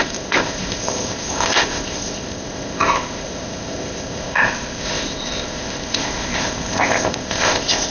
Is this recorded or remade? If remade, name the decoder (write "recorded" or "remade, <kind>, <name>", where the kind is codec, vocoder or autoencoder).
remade, codec, ZipCodec